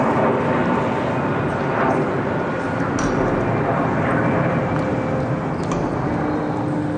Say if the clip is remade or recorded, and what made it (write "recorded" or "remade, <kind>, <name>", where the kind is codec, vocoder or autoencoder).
recorded